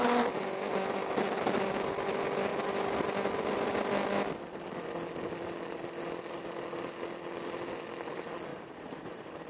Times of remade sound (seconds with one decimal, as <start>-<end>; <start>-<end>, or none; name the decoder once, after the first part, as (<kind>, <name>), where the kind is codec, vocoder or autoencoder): 8.5-9.5 (vocoder, BigVGAN v2)